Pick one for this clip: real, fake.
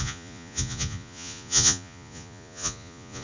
fake